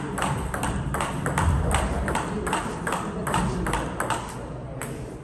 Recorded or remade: recorded